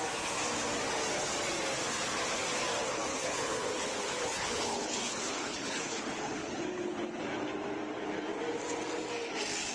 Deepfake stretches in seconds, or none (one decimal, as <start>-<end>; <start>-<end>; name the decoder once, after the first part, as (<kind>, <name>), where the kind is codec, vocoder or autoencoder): 3.1-7.2 (codec, HILCodec)